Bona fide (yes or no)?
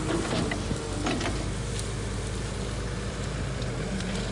yes